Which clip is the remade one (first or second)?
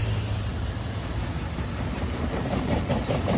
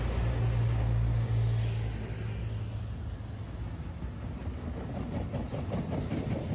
first